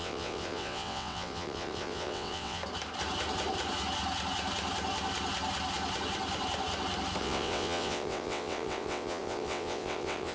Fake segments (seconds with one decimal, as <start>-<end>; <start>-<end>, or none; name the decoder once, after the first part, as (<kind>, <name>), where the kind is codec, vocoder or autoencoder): 0.0-2.6 (vocoder, WaveNeXt); 7.2-10.3